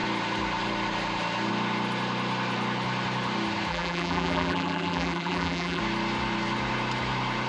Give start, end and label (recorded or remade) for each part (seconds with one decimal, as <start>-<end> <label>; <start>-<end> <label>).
0.0-3.7 recorded; 3.7-5.8 remade; 5.8-7.5 recorded